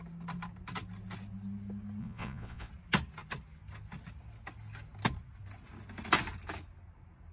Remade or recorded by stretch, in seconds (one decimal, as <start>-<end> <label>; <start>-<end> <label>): 0.0-2.0 recorded; 2.0-2.7 remade; 2.7-7.3 recorded